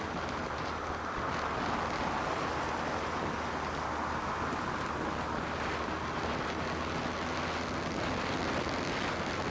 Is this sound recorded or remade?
recorded